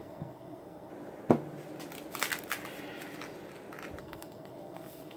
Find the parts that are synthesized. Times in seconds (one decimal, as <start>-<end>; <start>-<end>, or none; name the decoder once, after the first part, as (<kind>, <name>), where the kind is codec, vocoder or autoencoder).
0.0-0.9 (codec, SNAC); 4.0-5.2

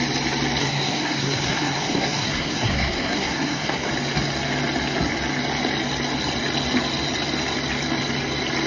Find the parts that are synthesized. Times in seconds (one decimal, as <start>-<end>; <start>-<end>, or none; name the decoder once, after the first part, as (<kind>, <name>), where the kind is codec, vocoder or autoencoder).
0.6-3.9 (codec, SNAC)

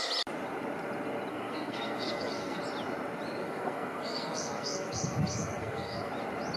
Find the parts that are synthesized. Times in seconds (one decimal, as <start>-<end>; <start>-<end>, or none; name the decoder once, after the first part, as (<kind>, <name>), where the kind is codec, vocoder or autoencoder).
1.3-2.6 (codec, SNAC); 3.4-6.1

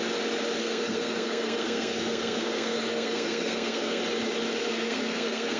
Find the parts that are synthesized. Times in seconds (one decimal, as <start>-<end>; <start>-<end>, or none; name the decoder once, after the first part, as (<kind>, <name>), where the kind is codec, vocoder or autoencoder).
0.6-4.0 (codec, SNAC); 4.6-5.6

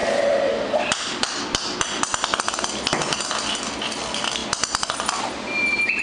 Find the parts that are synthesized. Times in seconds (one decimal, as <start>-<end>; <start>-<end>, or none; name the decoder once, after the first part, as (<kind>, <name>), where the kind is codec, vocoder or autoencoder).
none